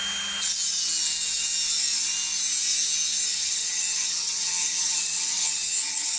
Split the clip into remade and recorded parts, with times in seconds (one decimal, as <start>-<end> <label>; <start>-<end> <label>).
0.0-3.3 recorded; 3.3-6.2 remade